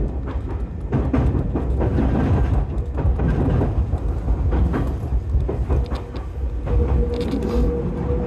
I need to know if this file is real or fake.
real